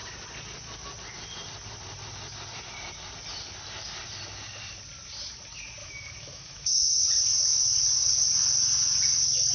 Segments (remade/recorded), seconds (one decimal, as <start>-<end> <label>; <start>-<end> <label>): 0.0-5.8 recorded; 5.8-7.0 remade; 7.0-9.5 recorded

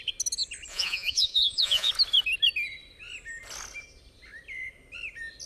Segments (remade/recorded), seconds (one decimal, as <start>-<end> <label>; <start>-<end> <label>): 0.0-0.7 recorded; 0.7-1.9 remade; 1.9-5.5 recorded

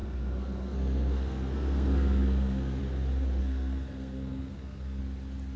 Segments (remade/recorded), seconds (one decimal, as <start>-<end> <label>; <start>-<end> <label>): 0.0-2.8 remade; 2.8-3.4 recorded; 3.4-5.0 remade; 5.0-5.6 recorded

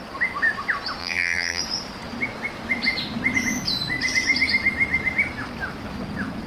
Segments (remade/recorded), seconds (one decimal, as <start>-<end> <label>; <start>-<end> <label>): 0.0-1.0 recorded; 1.0-1.6 remade; 1.6-6.5 recorded

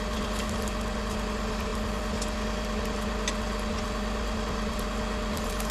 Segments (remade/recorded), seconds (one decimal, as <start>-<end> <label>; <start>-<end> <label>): 0.0-5.7 recorded

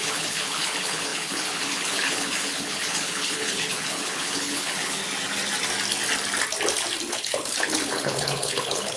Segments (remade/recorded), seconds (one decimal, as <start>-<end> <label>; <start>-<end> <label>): 0.0-5.0 remade; 5.0-7.1 recorded; 7.1-9.0 remade

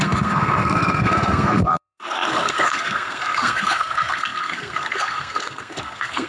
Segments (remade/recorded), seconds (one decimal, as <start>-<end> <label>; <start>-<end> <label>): 0.0-6.3 remade

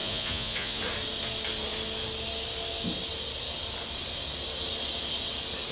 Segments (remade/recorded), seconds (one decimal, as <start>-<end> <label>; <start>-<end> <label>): 0.0-0.8 remade; 0.8-5.7 recorded